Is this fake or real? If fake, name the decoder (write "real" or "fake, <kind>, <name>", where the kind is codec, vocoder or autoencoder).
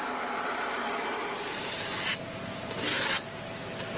real